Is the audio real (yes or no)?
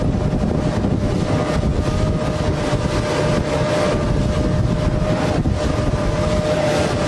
yes